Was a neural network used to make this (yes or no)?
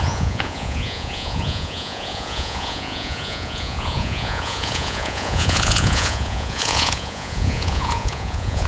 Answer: yes